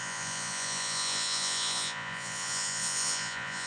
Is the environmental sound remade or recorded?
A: remade